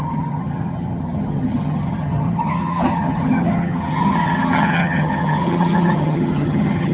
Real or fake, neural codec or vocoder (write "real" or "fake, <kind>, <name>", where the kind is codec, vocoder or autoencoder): fake, vocoder, HiFi-GAN